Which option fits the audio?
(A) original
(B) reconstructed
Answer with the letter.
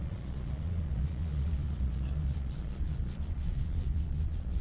B